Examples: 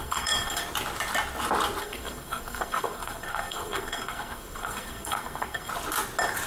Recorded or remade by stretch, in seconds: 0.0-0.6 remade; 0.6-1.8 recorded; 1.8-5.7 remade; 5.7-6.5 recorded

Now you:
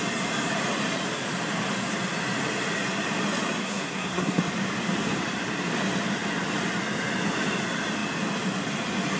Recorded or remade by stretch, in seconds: 0.0-3.6 recorded; 3.6-4.4 remade; 4.4-9.2 recorded

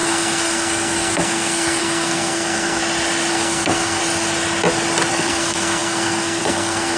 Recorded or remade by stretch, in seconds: 0.0-2.8 remade; 2.8-3.3 recorded; 3.3-4.0 remade; 4.0-5.1 recorded; 5.1-7.0 remade

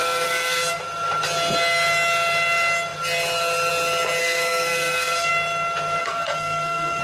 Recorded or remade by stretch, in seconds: 0.0-0.7 remade; 0.7-4.2 recorded; 4.2-5.3 remade; 5.3-6.0 recorded; 6.0-7.0 remade

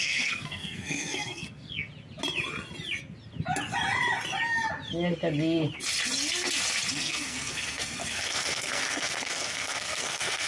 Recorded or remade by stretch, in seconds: 0.0-1.9 remade; 1.9-6.9 recorded; 6.9-10.5 remade

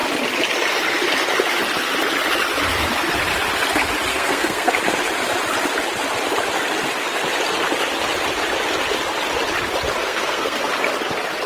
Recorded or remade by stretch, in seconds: 0.0-4.1 recorded; 4.1-4.7 remade; 4.7-10.0 recorded; 10.0-10.6 remade; 10.6-11.5 recorded

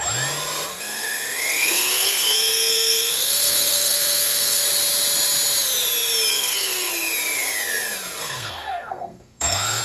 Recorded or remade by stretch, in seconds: 0.0-0.7 recorded; 0.7-4.6 remade; 4.6-6.3 recorded; 6.3-6.9 remade; 6.9-8.2 recorded; 8.2-9.8 remade

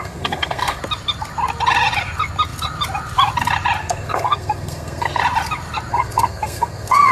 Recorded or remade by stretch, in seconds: 0.0-0.8 remade; 0.8-3.8 recorded; 3.8-5.2 remade; 5.2-5.9 recorded; 5.9-7.1 remade